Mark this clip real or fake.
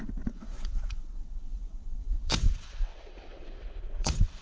fake